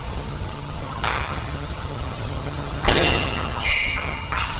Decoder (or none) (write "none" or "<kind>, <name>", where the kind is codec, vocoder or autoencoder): vocoder, HiFi-GAN